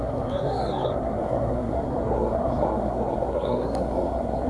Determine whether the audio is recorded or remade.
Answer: remade